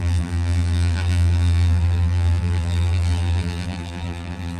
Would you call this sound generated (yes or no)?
yes